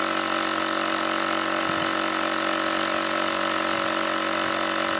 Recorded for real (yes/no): yes